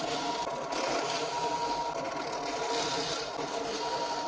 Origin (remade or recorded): recorded